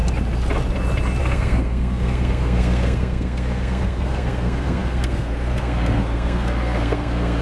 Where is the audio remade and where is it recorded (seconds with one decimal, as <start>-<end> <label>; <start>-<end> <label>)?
0.0-1.2 recorded; 1.2-7.4 remade